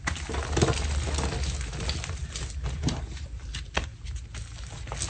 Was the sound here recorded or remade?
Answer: recorded